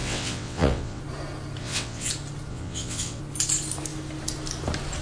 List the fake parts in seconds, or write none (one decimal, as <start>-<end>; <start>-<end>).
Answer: 0.0-1.0; 1.6-2.1; 2.5-3.2